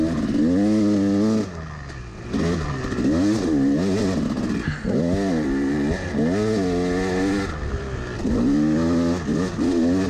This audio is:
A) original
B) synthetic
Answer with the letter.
A